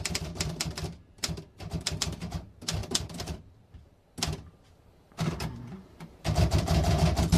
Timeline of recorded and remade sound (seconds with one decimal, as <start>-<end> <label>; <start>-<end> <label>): 0.0-4.0 remade; 4.0-4.8 recorded; 4.8-7.4 remade